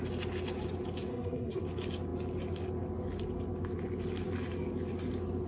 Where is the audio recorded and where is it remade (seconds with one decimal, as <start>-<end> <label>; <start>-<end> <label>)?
0.0-1.1 recorded; 1.1-1.6 remade; 1.6-5.5 recorded